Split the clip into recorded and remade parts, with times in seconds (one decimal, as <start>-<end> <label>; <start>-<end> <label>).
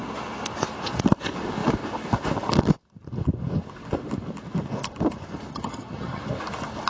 0.0-5.5 recorded; 5.5-6.2 remade; 6.2-6.9 recorded